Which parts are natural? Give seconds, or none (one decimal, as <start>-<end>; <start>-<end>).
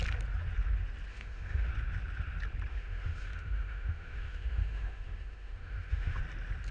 0.0-1.1; 1.7-2.7; 6.2-6.7